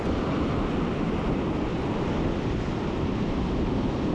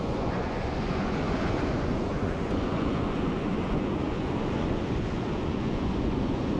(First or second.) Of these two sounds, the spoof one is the second